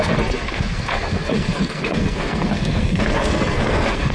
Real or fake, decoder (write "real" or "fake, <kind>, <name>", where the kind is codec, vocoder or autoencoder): fake, codec, SNAC